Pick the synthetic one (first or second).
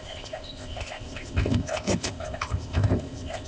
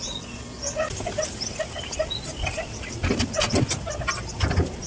first